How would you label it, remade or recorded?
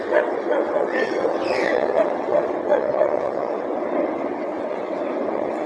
remade